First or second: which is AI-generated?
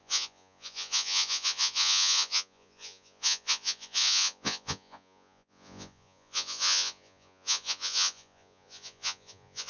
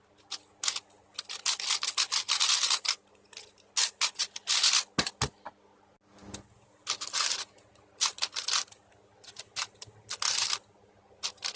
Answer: first